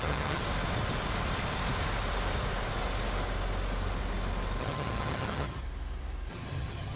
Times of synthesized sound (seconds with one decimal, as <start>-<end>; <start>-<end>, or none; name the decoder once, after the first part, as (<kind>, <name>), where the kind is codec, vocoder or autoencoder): 0.0-0.4 (vocoder, HiFi-GAN); 4.6-5.6; 6.3-7.0